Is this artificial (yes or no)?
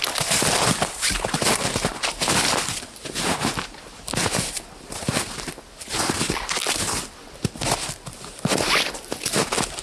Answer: no